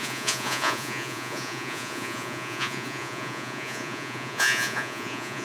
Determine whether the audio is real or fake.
fake